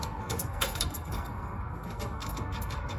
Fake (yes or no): yes